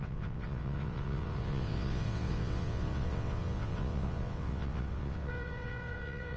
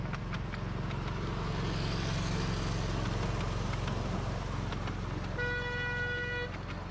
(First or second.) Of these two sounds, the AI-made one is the first